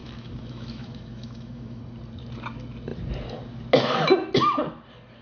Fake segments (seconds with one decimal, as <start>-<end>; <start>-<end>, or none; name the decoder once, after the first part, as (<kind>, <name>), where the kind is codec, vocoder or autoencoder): 0.0-1.8 (autoencoder, DAC-VAE)